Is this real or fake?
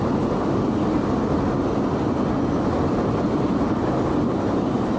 real